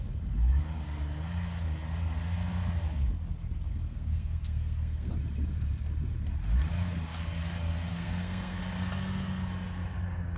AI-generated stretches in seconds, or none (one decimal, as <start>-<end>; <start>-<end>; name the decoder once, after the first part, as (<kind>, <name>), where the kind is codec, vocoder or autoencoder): 3.7-5.1 (codec, SNAC); 7.9-8.6